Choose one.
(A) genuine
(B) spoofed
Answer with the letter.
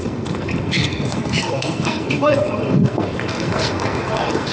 B